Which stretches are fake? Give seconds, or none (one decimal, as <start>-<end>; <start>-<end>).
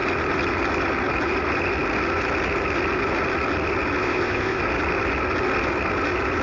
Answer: 4.0-4.6